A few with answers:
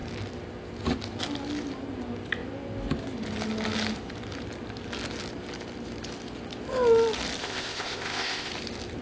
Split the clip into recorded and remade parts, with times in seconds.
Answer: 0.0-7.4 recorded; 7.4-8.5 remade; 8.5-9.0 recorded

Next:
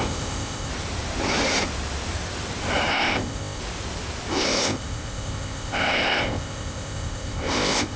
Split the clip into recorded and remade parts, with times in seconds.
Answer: 0.0-0.7 remade; 0.7-2.9 recorded; 2.9-3.6 remade; 3.6-4.3 recorded; 4.3-8.0 remade